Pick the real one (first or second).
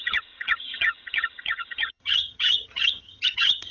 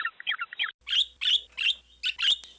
second